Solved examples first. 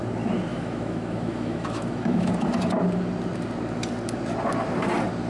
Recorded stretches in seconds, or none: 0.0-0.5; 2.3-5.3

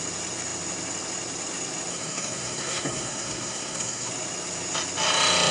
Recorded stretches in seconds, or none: 0.0-1.9; 4.1-5.5